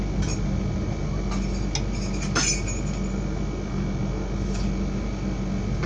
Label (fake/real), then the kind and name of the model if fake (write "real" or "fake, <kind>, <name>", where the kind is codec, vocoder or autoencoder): real